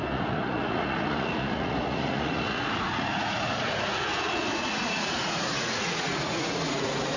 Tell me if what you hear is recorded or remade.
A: remade